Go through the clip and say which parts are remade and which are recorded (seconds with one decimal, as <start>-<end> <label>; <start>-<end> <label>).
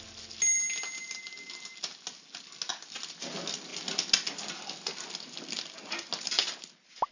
0.0-7.1 recorded